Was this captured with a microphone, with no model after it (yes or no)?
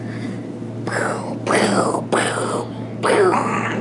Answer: yes